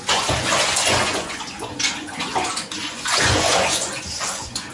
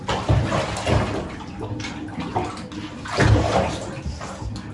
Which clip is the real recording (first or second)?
second